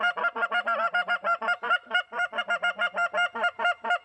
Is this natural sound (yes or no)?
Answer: no